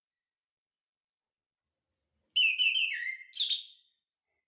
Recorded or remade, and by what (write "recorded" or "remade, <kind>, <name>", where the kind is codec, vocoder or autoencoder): recorded